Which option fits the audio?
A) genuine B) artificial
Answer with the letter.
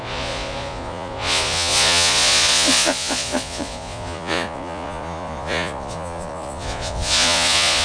B